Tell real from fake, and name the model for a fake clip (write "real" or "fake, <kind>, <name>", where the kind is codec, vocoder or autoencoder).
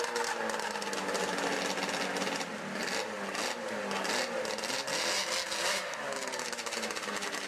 real